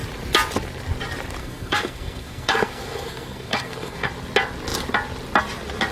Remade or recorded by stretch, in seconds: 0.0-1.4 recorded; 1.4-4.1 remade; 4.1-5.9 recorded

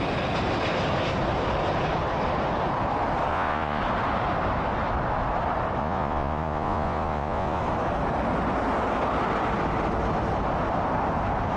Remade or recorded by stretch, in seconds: 0.0-3.3 recorded; 3.3-3.8 remade; 3.8-5.8 recorded; 5.8-7.6 remade; 7.6-11.6 recorded

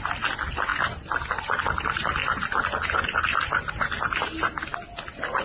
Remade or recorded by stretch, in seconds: 0.0-5.4 recorded

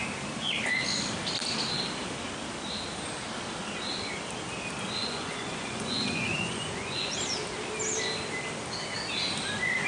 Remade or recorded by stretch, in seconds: 0.0-5.0 recorded; 5.0-7.1 remade; 7.1-9.9 recorded

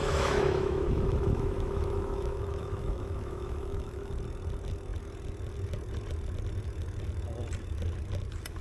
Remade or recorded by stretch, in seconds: 0.0-4.1 remade; 4.1-8.6 recorded

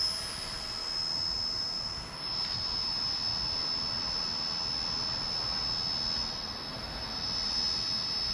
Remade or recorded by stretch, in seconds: 0.0-0.8 remade; 0.8-1.6 recorded; 1.6-3.2 remade; 3.2-6.8 recorded; 6.8-8.3 remade